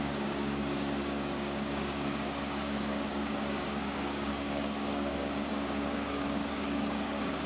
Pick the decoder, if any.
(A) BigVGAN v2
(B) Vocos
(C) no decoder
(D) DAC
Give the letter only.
D